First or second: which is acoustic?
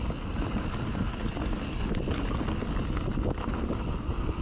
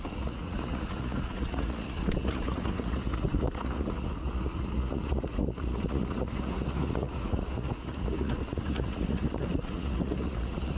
first